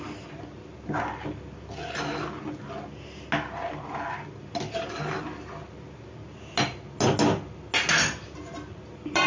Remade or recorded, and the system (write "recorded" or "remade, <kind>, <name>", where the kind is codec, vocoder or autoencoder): recorded